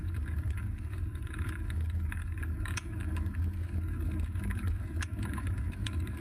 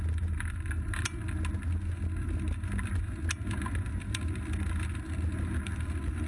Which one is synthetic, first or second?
first